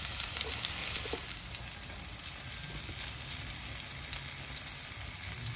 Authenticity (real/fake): real